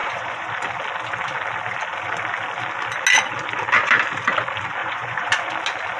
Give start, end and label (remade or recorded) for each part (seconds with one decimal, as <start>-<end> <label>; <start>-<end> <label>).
0.0-0.5 remade; 0.5-4.8 recorded; 4.8-5.5 remade; 5.5-6.0 recorded